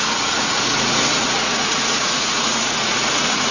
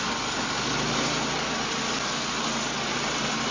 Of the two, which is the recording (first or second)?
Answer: second